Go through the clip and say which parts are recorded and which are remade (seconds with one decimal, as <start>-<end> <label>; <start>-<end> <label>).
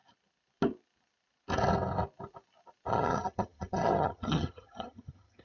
0.0-2.9 recorded; 2.9-5.4 remade